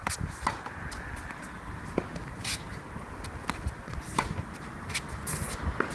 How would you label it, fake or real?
real